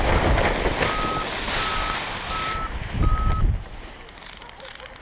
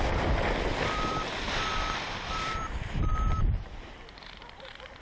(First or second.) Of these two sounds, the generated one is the second